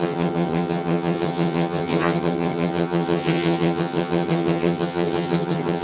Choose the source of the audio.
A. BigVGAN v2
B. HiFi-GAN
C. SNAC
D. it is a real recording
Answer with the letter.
B